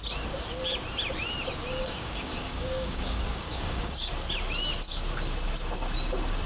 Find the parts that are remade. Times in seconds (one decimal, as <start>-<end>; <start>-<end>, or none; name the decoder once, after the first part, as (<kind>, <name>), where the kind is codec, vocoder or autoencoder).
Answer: 1.7-4.1 (codec, DAC)